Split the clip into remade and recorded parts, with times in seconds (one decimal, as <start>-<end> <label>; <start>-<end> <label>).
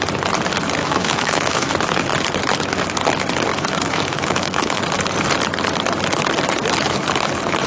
0.0-0.8 recorded; 0.8-1.7 remade; 1.7-3.5 recorded; 3.5-4.8 remade; 4.8-7.7 recorded